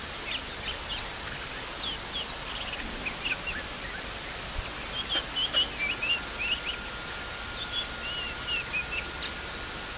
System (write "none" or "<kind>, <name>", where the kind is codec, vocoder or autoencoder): none